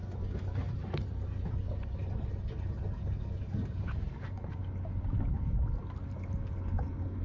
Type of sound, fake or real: real